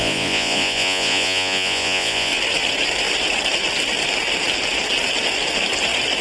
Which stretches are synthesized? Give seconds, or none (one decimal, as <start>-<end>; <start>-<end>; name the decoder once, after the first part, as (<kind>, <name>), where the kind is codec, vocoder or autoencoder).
0.0-2.3 (vocoder, Vocos)